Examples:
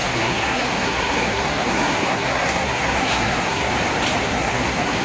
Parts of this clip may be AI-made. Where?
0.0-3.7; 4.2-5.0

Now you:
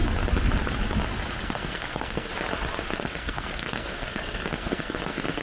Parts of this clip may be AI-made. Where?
1.4-2.3; 2.9-5.4

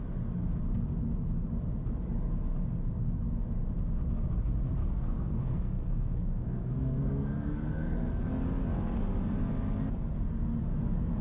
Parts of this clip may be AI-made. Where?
4.8-8.3